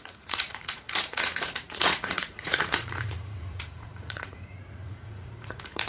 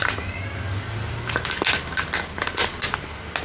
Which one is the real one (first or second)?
second